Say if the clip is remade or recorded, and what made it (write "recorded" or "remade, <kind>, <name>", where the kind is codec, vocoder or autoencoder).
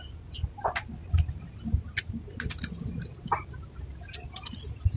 recorded